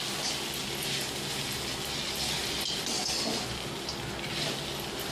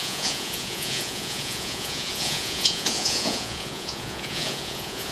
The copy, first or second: second